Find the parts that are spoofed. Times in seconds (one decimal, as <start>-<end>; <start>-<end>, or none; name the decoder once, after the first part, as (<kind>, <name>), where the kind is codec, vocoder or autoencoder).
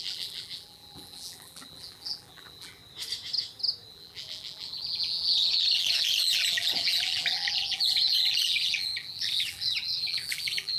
0.0-2.8 (vocoder, BigVGAN v2); 3.9-10.8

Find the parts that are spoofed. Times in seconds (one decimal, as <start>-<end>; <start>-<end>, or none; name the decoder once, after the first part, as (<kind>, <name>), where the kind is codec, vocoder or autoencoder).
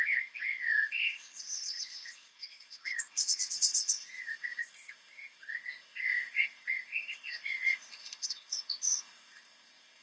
0.0-10.0 (codec, ZipCodec)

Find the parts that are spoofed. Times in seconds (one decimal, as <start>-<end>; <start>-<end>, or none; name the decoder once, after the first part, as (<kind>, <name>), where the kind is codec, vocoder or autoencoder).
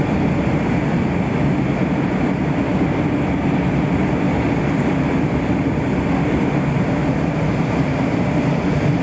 none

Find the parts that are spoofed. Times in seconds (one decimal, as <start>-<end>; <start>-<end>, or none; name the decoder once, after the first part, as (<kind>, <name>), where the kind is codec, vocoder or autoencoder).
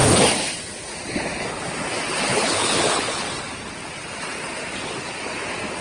2.3-3.3 (codec, HILCodec)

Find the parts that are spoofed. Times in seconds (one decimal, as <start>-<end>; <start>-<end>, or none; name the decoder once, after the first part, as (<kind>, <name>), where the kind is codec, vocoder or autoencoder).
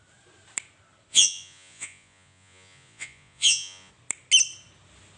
1.1-3.9 (vocoder, Vocos)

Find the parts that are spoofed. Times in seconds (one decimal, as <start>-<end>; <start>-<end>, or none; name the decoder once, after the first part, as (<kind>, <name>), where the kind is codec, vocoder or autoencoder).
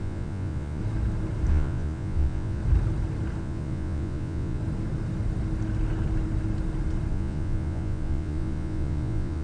0.0-0.8 (vocoder, Vocos); 1.5-2.6; 3.4-4.6; 7.1-9.4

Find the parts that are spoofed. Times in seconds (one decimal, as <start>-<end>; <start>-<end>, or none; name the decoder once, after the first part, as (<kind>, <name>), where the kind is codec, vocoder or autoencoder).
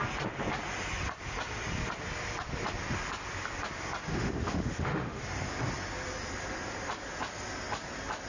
4.1-5.2 (autoencoder, DAC-VAE)